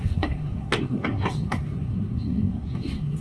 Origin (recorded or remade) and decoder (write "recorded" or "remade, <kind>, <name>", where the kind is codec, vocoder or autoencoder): remade, codec, SNAC